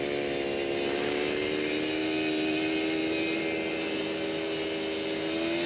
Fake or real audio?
real